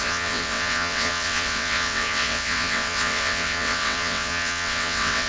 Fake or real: fake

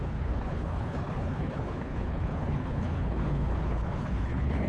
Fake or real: fake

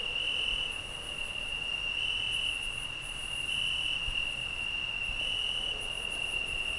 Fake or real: real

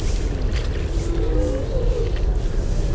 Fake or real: real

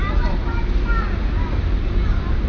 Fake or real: real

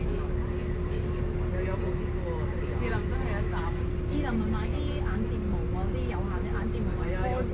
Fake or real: real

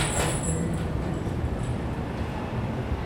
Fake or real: fake